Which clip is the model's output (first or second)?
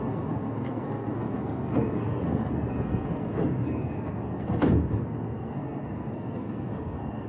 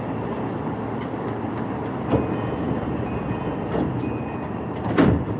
first